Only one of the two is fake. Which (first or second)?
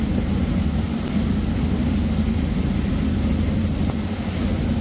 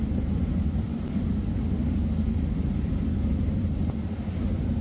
second